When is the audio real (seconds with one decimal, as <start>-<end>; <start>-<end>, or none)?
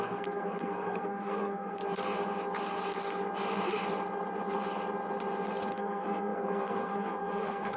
1.8-5.7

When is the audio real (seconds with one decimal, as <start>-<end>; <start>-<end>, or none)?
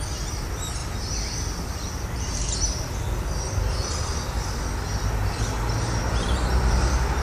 0.0-7.2